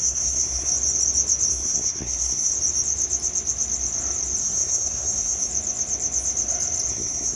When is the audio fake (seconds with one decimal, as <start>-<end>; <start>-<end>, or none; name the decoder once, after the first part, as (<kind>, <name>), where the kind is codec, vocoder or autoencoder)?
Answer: 0.0-0.7 (codec, SNAC); 1.5-2.5; 4.4-5.5; 6.9-7.4

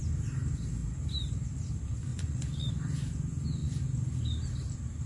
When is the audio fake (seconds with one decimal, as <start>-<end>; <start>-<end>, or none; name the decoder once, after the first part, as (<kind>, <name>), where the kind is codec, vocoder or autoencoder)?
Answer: 2.1-2.7 (vocoder, Vocos); 3.6-4.2

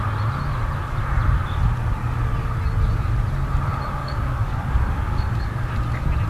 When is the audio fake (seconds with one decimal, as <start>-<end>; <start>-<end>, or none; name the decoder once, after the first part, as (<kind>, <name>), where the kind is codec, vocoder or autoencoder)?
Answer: 4.0-5.7 (codec, DAC)

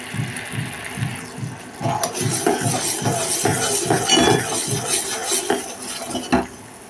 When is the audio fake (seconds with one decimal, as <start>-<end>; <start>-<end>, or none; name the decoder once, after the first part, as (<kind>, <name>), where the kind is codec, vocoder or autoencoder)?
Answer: none

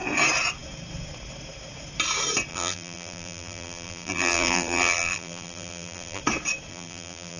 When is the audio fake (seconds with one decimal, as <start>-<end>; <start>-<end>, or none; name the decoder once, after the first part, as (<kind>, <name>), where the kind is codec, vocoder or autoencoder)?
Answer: 2.5-6.2 (vocoder, BigVGAN v2); 6.7-7.4